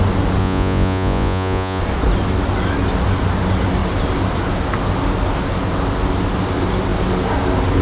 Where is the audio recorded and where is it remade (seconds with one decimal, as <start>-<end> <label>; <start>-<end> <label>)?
0.0-0.4 recorded; 0.4-1.8 remade; 1.8-7.8 recorded